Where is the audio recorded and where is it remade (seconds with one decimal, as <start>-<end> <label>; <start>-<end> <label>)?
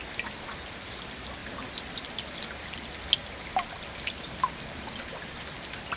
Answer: 0.0-6.0 recorded